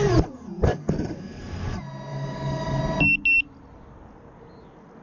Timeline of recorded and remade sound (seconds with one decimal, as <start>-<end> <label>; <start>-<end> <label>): 0.0-0.7 recorded; 0.7-1.4 remade; 1.4-2.1 recorded; 2.1-2.8 remade; 2.8-5.0 recorded